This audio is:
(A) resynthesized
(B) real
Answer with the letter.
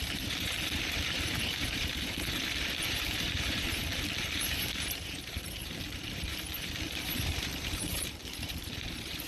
A